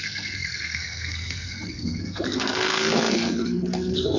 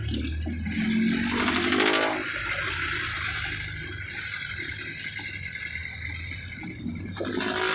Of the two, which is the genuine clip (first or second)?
second